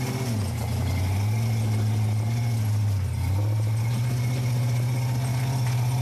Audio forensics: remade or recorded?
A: recorded